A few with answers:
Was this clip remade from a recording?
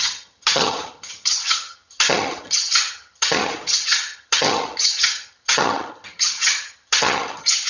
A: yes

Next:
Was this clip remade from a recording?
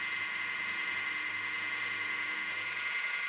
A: no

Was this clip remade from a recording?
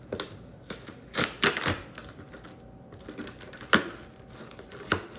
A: no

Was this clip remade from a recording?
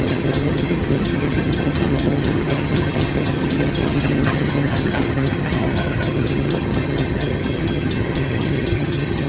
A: yes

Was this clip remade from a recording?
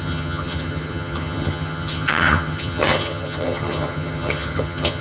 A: yes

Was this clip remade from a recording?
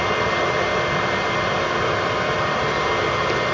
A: no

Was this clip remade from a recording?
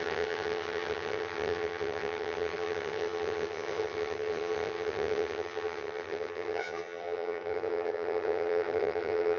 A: yes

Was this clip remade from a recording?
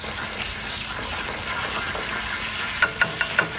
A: no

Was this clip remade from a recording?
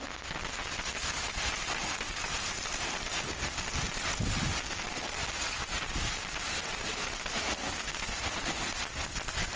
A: no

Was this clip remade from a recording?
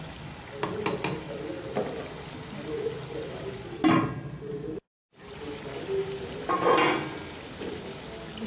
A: no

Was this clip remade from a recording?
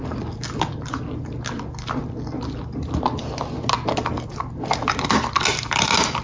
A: no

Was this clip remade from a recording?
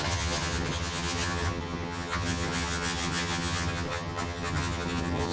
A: yes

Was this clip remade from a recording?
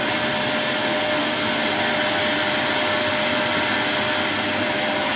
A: no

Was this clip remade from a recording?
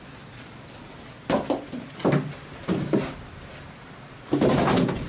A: no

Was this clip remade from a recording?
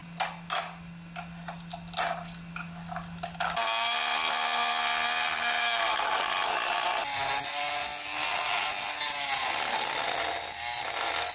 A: no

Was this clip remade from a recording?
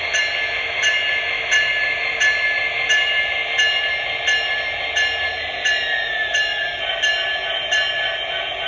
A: no